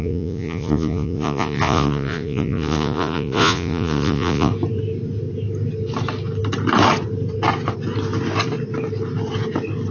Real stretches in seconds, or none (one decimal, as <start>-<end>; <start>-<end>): 4.5-9.9